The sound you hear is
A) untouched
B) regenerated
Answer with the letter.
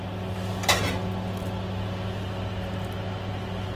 A